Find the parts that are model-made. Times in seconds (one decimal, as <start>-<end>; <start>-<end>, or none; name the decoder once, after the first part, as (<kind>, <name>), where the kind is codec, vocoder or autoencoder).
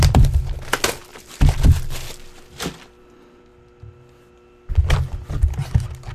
none